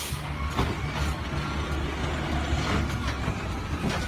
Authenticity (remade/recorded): recorded